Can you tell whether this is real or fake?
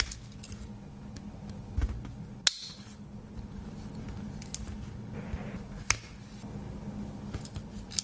real